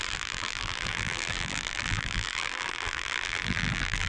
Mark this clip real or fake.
fake